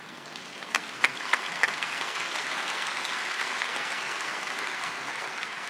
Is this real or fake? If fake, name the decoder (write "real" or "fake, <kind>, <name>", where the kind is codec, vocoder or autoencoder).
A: fake, codec, SNAC